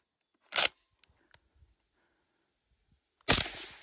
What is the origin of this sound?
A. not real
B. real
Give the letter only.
B